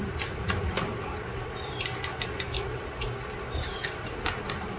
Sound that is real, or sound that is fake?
fake